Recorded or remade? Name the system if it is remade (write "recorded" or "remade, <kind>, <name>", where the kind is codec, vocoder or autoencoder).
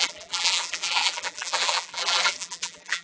remade, vocoder, BigVGAN v2